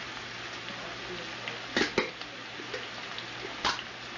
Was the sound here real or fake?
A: real